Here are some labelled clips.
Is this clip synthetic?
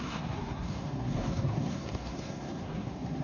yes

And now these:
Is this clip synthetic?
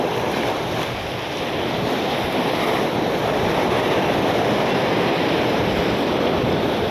no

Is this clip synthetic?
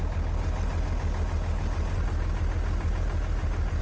no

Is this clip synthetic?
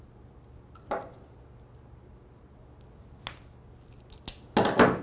no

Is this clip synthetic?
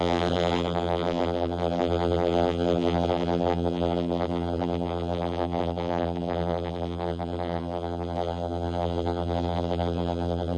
yes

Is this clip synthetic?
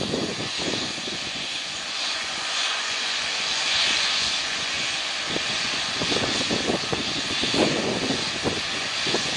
yes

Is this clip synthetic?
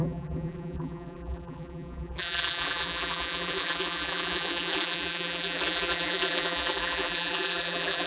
yes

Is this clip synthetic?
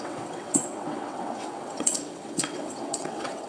yes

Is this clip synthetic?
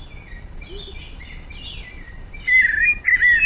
no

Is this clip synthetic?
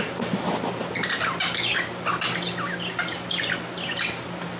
no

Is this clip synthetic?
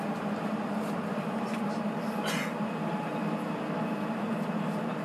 no